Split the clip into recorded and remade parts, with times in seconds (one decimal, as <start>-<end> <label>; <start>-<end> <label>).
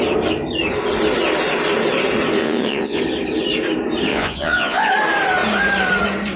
0.0-2.4 recorded; 2.4-3.0 remade; 3.0-4.1 recorded; 4.1-4.9 remade; 4.9-6.4 recorded